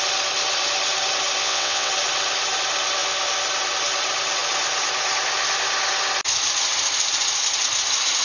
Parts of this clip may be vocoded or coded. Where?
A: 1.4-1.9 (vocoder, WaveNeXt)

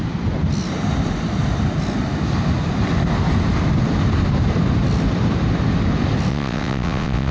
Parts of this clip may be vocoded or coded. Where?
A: 6.3-7.3 (vocoder, WaveNeXt)

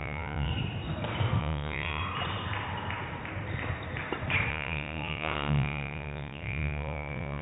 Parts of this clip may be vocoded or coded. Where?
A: 0.0-0.5 (vocoder, WaveNeXt); 1.4-2.0; 4.5-7.4

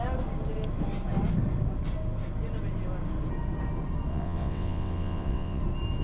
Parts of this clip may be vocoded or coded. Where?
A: 4.1-5.6 (vocoder, WaveNeXt)

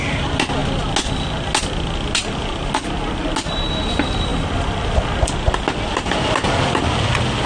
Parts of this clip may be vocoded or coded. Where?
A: none